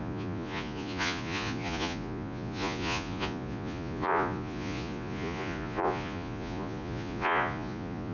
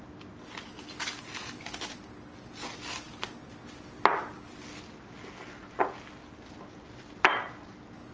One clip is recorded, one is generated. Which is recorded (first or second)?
second